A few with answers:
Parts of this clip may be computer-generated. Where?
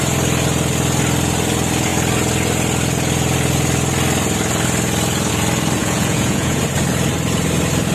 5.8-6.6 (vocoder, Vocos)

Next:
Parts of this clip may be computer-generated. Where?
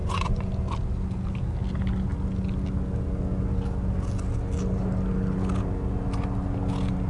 0.0-0.5 (vocoder, Vocos)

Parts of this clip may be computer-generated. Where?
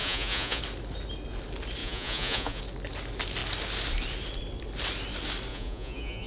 0.0-0.6 (vocoder, Vocos); 1.8-2.6; 5.5-6.3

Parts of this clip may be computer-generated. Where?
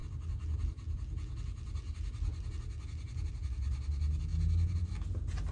none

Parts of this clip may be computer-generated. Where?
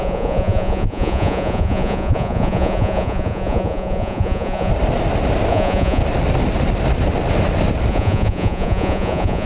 0.0-4.7 (vocoder, Vocos); 5.5-6.0; 7.9-9.5